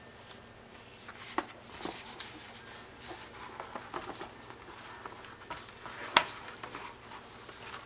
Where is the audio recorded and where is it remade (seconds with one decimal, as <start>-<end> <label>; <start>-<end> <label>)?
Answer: 0.0-7.9 recorded